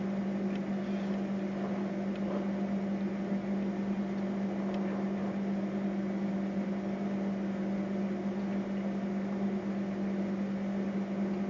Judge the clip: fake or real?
real